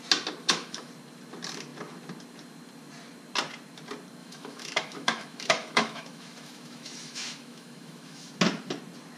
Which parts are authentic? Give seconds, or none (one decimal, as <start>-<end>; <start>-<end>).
0.0-0.4; 0.9-4.2; 8.3-9.2

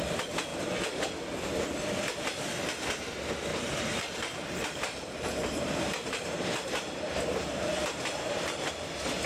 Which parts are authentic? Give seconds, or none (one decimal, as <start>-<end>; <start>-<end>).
0.0-3.5; 8.7-9.3